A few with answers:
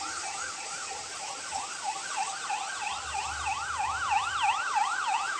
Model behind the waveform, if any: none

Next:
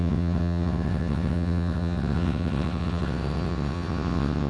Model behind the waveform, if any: vocoder, WaveNeXt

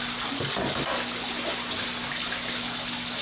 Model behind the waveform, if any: none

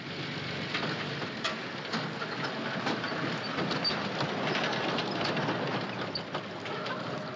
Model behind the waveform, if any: none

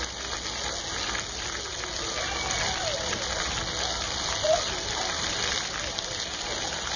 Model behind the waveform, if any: none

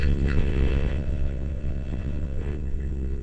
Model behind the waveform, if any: vocoder, WaveNeXt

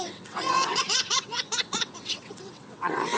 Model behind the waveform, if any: vocoder, WaveNeXt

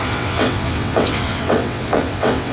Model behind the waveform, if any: vocoder, WaveNeXt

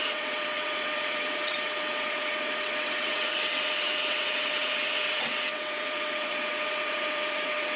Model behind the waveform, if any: vocoder, WaveNeXt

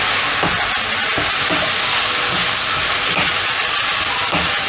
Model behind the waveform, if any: none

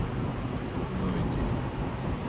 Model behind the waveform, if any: none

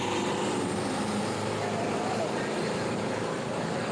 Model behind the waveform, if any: none